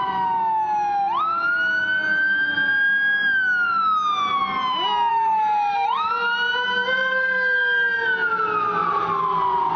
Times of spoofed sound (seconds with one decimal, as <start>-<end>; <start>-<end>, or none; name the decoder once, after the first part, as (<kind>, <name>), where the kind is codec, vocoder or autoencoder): 5.1-6.1 (autoencoder, DAC-VAE)